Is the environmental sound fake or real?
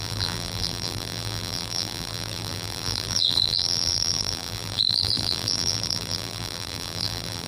fake